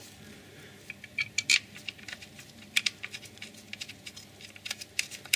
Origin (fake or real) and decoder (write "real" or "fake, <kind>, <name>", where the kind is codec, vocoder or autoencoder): real